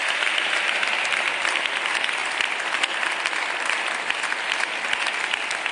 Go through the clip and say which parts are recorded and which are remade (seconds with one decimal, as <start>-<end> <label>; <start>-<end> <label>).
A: 0.0-2.2 recorded; 2.2-4.0 remade; 4.0-5.7 recorded